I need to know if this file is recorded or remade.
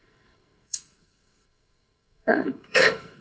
remade